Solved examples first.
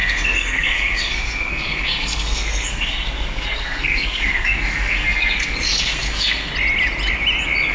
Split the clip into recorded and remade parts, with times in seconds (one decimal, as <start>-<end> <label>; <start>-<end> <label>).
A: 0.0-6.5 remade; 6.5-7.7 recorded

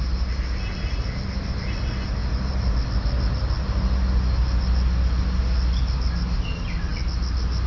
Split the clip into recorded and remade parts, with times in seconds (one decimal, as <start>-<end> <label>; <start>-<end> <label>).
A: 0.0-7.7 recorded

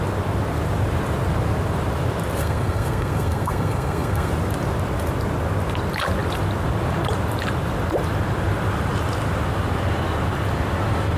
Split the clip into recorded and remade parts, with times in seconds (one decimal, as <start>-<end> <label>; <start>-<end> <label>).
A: 0.0-2.4 recorded; 2.4-4.3 remade; 4.3-11.2 recorded

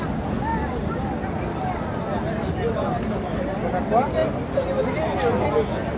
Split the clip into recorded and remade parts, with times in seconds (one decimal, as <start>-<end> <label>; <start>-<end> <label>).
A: 0.0-6.0 recorded

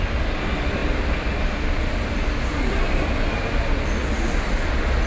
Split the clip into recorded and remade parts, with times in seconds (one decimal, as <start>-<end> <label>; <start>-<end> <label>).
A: 0.0-5.1 recorded